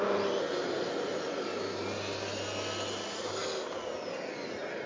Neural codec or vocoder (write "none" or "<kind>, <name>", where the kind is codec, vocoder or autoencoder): none